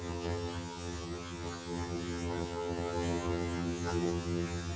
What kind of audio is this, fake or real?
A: fake